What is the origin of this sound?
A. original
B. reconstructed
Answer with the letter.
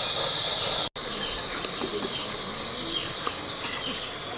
A